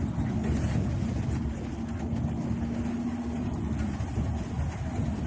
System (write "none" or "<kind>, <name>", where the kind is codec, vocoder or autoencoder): none